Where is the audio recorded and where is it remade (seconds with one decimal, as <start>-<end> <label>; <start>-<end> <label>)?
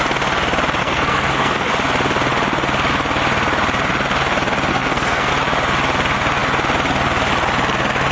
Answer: 0.0-0.8 recorded; 0.8-1.7 remade; 1.7-4.7 recorded; 4.7-5.3 remade; 5.3-8.1 recorded